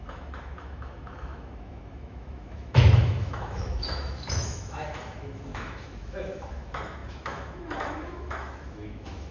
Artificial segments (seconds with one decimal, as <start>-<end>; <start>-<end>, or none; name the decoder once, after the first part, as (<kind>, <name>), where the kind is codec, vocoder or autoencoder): 0.0-9.3 (autoencoder, DAC-VAE)